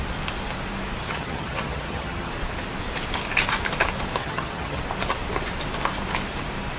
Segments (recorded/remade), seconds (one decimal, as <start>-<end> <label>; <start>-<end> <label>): 0.0-1.0 recorded; 1.0-2.3 remade; 2.3-4.2 recorded; 4.2-4.8 remade; 4.8-6.8 recorded